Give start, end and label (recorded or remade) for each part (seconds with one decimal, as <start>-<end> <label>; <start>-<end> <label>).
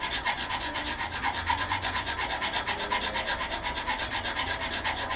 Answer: 0.0-0.8 remade; 0.8-1.6 recorded; 1.6-2.2 remade; 2.2-4.7 recorded; 4.7-5.2 remade